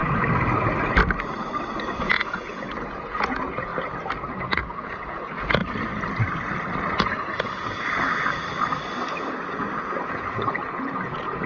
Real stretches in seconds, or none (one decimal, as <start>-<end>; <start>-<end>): 0.0-2.0; 3.7-4.4; 5.6-6.9; 8.4-9.1